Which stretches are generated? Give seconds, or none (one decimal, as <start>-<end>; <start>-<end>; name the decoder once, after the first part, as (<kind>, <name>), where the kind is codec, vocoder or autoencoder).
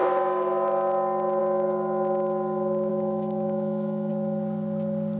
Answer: 2.9-4.1 (autoencoder, DAC-VAE)